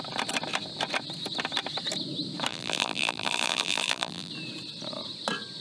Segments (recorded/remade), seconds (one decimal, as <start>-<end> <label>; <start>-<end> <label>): 0.0-2.5 recorded; 2.5-4.3 remade; 4.3-5.6 recorded